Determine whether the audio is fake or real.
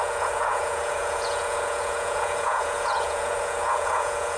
fake